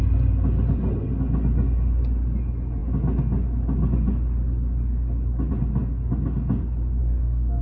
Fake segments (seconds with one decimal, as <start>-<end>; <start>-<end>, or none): 7.0-7.6